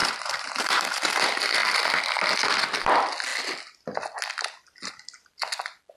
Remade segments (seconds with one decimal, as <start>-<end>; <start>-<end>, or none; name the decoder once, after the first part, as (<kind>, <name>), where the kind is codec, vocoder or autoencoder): 0.0-1.2 (vocoder, BigVGAN v2)